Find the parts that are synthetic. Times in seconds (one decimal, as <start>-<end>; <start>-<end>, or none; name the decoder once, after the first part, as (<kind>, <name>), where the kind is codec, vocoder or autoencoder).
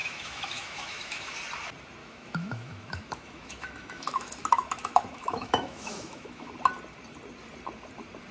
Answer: 0.0-1.4 (autoencoder, DAC-VAE); 2.0-6.5